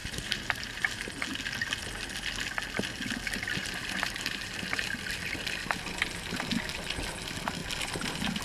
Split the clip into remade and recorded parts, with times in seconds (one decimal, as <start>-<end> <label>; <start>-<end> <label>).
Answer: 0.0-1.2 remade; 1.2-3.6 recorded; 3.6-4.8 remade; 4.8-8.4 recorded